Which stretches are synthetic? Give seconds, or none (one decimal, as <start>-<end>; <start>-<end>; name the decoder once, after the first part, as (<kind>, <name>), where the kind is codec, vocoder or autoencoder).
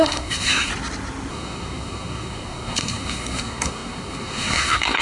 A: 0.0-0.7 (codec, SNAC); 1.3-5.0